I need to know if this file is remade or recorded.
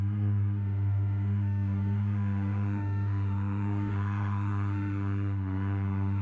remade